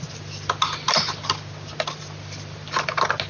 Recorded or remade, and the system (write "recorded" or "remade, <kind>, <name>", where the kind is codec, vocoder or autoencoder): recorded